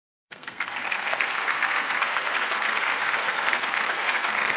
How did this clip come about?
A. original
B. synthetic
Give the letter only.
B